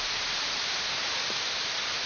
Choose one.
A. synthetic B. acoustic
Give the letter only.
B